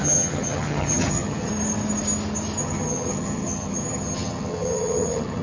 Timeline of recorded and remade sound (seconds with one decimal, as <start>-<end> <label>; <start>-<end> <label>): 0.0-1.5 remade; 1.5-2.6 recorded; 2.6-5.4 remade